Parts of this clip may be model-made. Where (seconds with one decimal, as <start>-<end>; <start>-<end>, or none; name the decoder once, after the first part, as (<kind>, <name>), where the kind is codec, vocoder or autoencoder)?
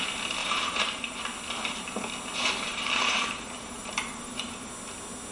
0.4-1.2 (vocoder, BigVGAN v2); 2.7-4.7